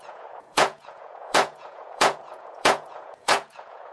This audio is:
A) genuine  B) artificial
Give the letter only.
B